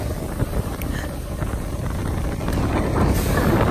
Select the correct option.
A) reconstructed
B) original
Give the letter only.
B